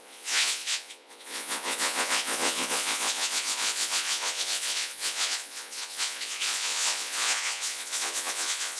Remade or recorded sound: remade